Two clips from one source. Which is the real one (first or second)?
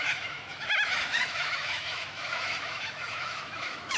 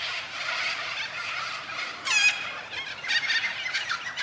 second